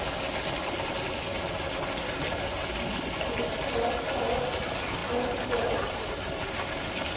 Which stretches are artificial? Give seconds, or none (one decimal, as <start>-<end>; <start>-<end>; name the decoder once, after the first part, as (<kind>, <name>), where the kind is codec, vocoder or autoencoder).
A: none